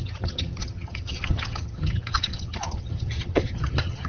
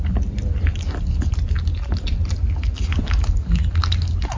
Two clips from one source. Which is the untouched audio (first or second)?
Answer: second